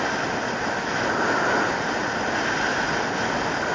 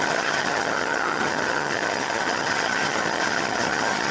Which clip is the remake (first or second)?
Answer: second